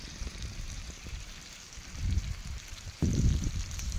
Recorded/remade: remade